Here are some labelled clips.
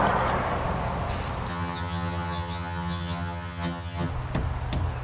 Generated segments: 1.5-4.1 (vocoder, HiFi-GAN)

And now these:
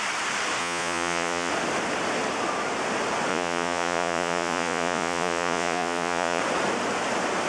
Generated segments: 0.6-1.5 (vocoder, Vocos); 3.3-6.4

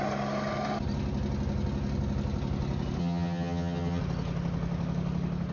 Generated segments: 3.0-4.0 (vocoder, HiFi-GAN)

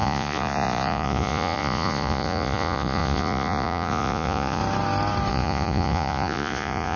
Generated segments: 0.0-4.6 (vocoder, Vocos); 5.3-7.0